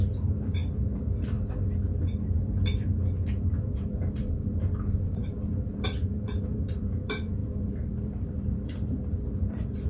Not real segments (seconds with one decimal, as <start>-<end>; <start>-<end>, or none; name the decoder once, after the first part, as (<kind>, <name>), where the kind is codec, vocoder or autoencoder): 0.0-9.9 (vocoder, BigVGAN v2)